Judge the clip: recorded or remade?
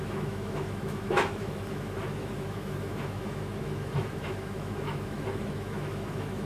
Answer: remade